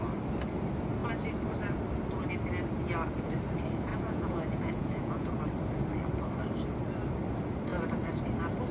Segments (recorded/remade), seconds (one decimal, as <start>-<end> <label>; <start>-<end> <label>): 0.0-3.9 recorded; 3.9-5.3 remade; 5.3-8.7 recorded